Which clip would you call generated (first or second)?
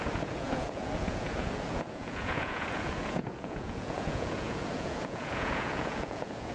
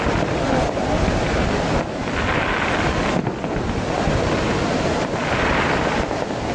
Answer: first